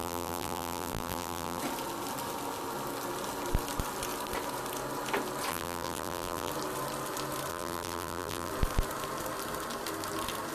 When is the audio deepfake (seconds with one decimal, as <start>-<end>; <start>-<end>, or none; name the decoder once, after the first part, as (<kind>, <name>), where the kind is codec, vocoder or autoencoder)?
0.0-1.6 (vocoder, BigVGAN v2); 5.5-6.5; 7.5-8.5